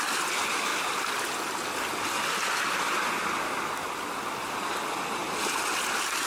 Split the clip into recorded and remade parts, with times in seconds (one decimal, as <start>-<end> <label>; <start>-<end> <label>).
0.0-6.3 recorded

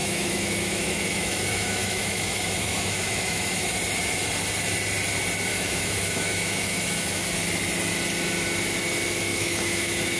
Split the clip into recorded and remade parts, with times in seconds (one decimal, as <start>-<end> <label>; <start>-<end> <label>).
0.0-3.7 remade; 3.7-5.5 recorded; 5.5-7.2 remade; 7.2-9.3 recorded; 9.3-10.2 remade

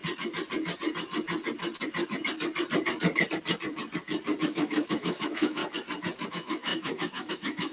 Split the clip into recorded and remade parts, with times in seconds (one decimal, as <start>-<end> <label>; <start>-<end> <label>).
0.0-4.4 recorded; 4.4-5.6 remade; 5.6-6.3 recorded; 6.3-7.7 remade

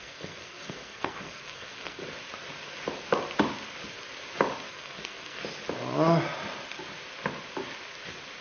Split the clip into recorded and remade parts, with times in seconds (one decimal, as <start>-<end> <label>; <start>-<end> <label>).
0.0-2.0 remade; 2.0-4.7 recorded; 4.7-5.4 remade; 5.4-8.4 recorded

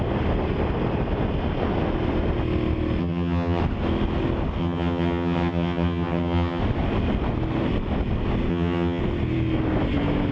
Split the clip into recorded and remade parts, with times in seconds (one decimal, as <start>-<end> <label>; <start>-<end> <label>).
0.0-3.0 recorded; 3.0-3.6 remade; 3.6-4.6 recorded; 4.6-6.6 remade; 6.6-8.5 recorded; 8.5-9.0 remade; 9.0-10.3 recorded

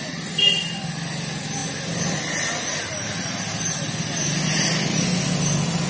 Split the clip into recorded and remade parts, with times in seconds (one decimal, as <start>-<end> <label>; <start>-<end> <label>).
0.0-5.9 recorded